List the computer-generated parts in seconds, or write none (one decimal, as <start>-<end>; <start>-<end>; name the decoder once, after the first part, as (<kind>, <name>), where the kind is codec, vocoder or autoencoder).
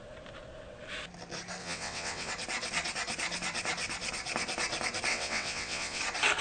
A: 1.6-2.3 (vocoder, WaveNeXt); 5.1-6.0